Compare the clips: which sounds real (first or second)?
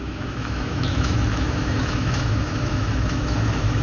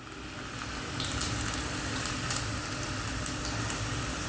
second